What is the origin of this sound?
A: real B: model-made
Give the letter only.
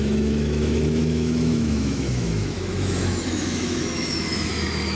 B